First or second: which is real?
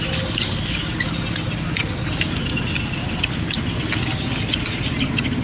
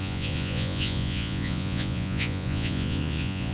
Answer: first